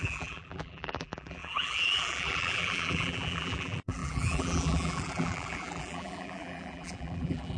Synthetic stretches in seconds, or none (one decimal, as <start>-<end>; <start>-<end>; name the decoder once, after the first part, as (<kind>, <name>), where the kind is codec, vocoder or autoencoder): 0.0-7.6 (vocoder, BigVGAN v2)